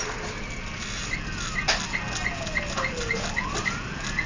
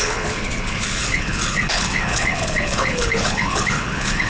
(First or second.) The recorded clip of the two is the first